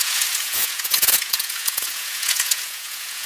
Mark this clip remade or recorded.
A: remade